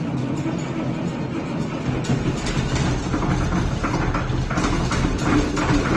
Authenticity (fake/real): real